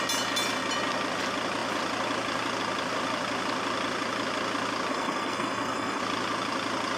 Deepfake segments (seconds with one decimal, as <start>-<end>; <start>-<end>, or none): 4.9-6.0